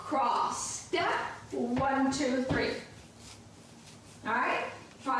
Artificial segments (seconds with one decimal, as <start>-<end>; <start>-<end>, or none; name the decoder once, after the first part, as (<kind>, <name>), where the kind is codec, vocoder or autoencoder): 0.0-2.5 (vocoder, BigVGAN v2)